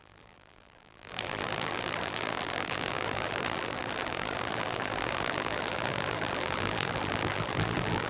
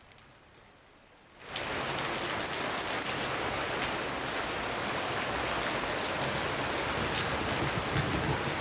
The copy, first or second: first